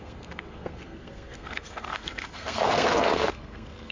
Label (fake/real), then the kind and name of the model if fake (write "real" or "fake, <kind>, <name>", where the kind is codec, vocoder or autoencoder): fake, codec, SNAC